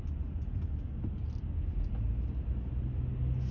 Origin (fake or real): real